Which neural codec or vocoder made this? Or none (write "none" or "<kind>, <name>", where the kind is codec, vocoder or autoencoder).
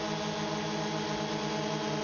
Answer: none